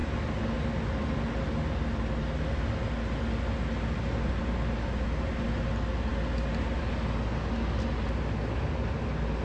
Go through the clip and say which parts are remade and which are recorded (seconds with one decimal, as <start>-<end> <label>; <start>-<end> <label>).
0.0-9.4 recorded